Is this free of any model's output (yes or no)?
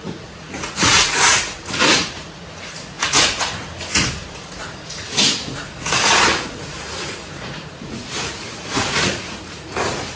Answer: no